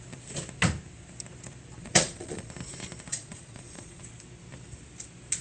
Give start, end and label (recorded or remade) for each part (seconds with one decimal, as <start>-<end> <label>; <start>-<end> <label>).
0.0-1.8 recorded; 1.8-2.5 remade; 2.5-3.1 recorded; 3.1-4.0 remade; 4.0-5.4 recorded